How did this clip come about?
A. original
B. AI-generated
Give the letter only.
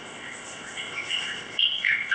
B